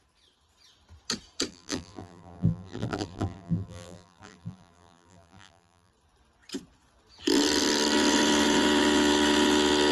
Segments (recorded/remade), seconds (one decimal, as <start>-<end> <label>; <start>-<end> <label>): 0.0-1.5 recorded; 1.5-5.9 remade; 5.9-9.9 recorded